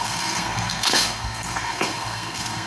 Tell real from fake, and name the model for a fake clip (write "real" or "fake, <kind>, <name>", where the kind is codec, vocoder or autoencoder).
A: fake, codec, SNAC